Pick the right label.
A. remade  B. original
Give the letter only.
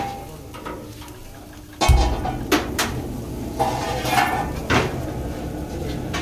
B